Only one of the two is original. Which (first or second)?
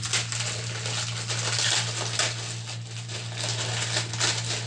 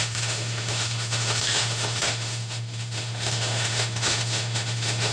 first